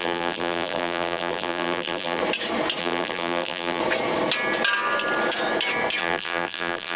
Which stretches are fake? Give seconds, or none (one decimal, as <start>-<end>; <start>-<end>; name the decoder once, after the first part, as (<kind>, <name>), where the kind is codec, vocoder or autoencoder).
0.0-2.2 (vocoder, BigVGAN v2); 2.8-3.8; 6.0-7.0